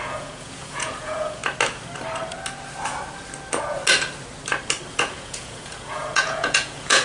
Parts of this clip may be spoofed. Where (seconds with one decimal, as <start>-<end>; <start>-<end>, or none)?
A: 0.0-1.4; 4.9-7.0